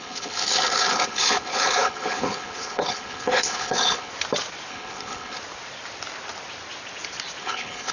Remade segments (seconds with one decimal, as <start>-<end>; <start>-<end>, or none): 0.0-4.1; 4.7-5.4; 7.4-7.9